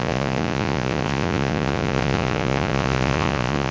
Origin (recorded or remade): remade